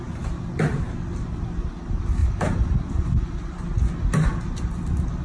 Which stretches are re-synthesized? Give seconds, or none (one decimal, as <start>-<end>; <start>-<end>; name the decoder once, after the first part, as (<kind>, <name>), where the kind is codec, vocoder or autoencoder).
2.2-3.4 (vocoder, BigVGAN v2)